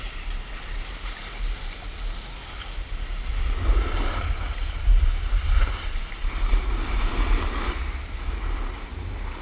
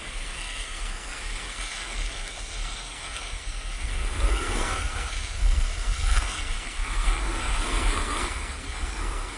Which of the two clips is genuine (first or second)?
first